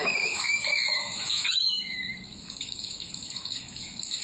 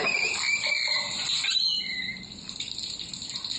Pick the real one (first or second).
second